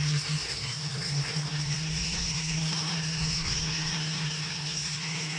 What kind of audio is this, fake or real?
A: fake